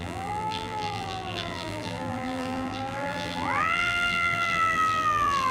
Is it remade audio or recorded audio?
remade